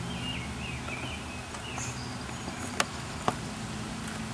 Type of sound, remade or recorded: recorded